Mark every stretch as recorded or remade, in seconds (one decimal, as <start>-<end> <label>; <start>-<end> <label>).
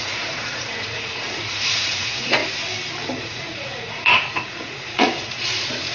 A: 0.0-2.4 remade; 2.4-3.2 recorded; 3.2-5.9 remade